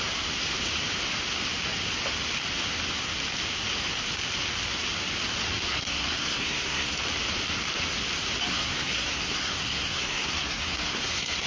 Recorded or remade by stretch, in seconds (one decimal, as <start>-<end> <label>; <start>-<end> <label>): 0.0-5.7 recorded; 5.7-7.0 remade; 7.0-8.5 recorded; 8.5-11.5 remade

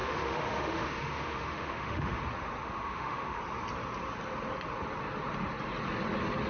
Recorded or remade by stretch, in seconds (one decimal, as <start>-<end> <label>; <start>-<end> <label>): 0.0-2.2 remade; 2.2-2.6 recorded; 2.6-3.4 remade; 3.4-6.5 recorded

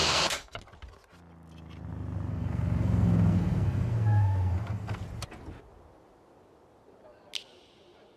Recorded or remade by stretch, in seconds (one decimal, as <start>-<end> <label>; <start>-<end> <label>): 0.0-0.6 remade; 0.6-2.3 recorded; 2.3-5.0 remade; 5.0-8.2 recorded

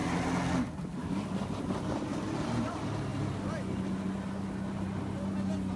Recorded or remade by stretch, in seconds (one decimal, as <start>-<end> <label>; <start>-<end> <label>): 0.0-5.8 recorded

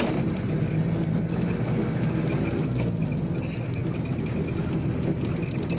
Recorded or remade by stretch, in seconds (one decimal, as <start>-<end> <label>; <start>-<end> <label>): 0.0-5.8 recorded

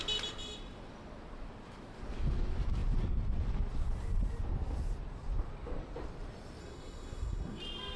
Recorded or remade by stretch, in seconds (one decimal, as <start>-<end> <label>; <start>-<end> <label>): 0.0-6.6 recorded; 6.6-7.6 remade; 7.6-8.0 recorded

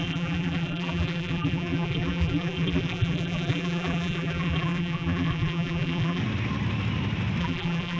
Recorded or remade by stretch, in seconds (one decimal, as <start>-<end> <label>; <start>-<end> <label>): 0.0-6.2 remade; 6.2-7.4 recorded; 7.4-8.0 remade

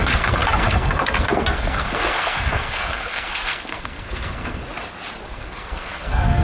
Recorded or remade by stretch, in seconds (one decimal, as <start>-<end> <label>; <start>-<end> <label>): 0.0-4.6 remade; 4.6-5.3 recorded; 5.3-6.4 remade